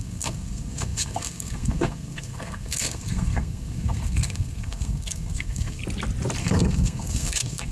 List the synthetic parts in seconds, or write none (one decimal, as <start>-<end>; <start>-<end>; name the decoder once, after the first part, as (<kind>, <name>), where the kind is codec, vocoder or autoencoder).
0.0-5.8 (codec, SNAC); 6.4-7.7